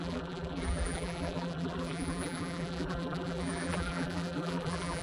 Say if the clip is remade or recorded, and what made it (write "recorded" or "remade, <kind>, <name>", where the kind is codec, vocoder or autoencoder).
remade, vocoder, BigVGAN v2